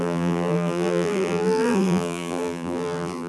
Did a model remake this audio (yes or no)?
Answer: yes